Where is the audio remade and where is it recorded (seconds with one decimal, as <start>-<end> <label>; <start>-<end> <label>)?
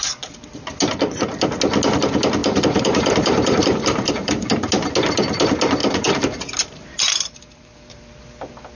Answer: 0.0-2.4 recorded; 2.4-4.5 remade; 4.5-5.8 recorded; 5.8-8.1 remade; 8.1-8.8 recorded